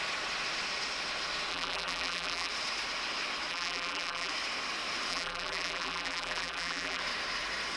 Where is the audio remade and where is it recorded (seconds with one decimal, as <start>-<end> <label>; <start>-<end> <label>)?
0.0-1.5 recorded; 1.5-2.5 remade; 2.5-3.5 recorded; 3.5-4.3 remade; 4.3-5.1 recorded; 5.1-7.0 remade; 7.0-7.8 recorded